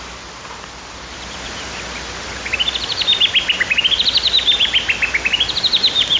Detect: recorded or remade recorded